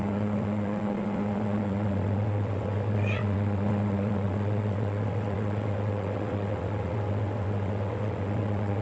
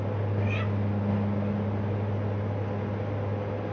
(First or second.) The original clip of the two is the second